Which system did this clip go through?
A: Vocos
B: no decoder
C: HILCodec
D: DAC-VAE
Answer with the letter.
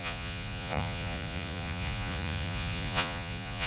A